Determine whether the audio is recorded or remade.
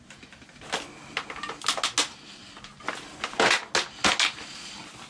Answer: recorded